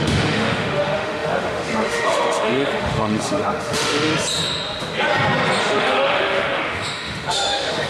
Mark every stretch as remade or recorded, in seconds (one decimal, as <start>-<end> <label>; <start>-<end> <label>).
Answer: 0.0-4.1 remade; 4.1-5.6 recorded; 5.6-7.9 remade